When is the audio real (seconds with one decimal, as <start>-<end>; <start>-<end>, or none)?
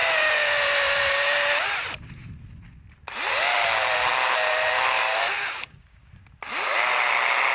0.0-4.9; 6.1-7.5